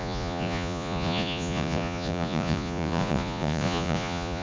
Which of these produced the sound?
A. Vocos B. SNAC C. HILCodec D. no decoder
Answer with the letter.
A